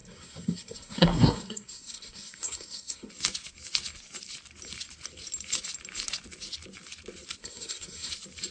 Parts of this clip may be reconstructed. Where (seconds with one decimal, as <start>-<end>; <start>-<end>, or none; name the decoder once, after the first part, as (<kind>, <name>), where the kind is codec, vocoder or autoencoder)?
0.0-3.1 (codec, SNAC); 7.4-8.1